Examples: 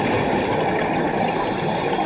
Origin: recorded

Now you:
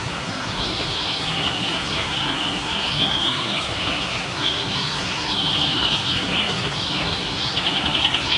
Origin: remade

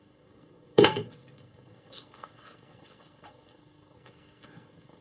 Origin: remade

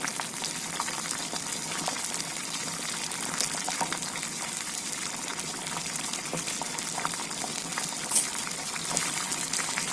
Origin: recorded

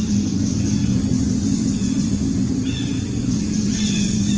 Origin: remade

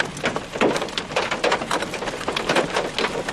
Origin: recorded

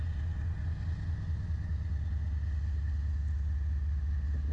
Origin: recorded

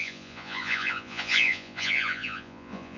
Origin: remade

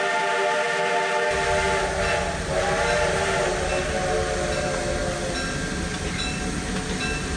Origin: recorded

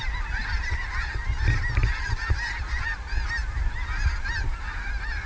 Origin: recorded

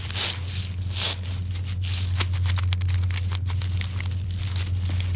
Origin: recorded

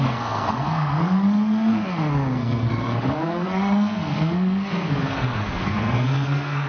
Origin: remade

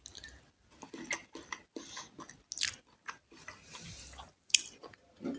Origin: recorded